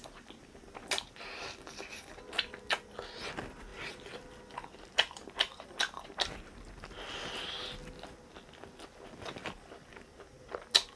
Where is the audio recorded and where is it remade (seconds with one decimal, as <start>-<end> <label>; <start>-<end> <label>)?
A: 0.0-3.7 recorded; 3.7-6.1 remade; 6.1-11.0 recorded